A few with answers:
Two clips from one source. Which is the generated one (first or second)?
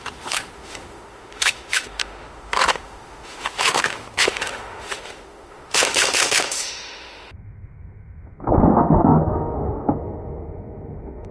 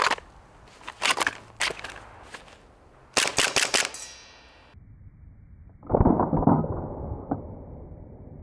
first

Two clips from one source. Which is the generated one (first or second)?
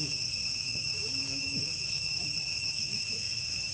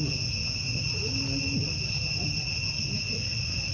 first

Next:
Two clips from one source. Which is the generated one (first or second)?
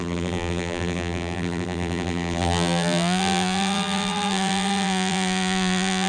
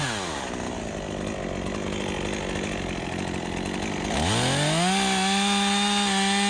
first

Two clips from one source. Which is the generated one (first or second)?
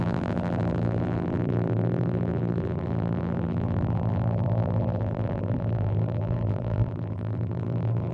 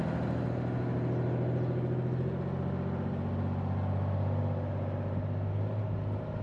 first